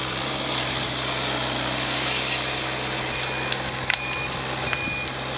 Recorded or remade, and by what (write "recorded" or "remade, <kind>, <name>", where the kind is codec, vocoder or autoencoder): recorded